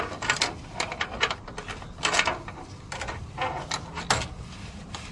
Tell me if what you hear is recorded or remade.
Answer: recorded